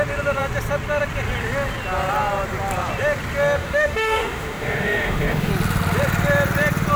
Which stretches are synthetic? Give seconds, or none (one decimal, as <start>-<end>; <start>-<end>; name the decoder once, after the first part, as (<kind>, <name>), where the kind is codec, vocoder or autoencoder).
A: 3.6-5.5 (autoencoder, DAC-VAE)